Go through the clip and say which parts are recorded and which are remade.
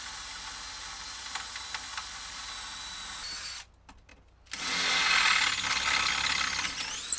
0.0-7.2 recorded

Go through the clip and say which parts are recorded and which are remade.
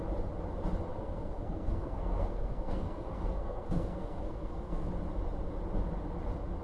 0.0-0.9 recorded; 0.9-4.9 remade; 4.9-6.6 recorded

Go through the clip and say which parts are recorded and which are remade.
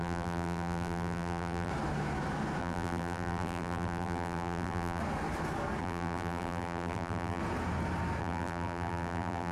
0.0-1.7 remade; 1.7-2.6 recorded; 2.6-5.0 remade; 5.0-5.8 recorded; 5.8-7.4 remade; 7.4-8.2 recorded; 8.2-9.5 remade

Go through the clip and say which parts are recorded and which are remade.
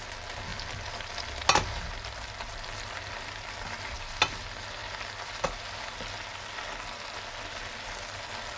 0.0-8.6 recorded